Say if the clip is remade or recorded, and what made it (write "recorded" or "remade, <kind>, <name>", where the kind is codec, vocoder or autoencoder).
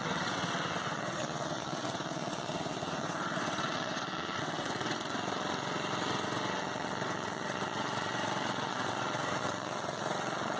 remade, vocoder, WaveNeXt